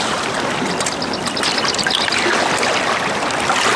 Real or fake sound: real